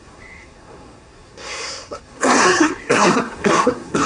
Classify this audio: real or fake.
fake